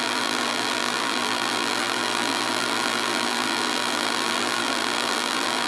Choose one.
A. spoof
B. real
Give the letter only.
A